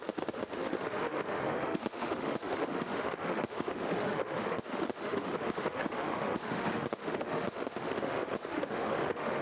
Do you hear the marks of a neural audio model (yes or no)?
yes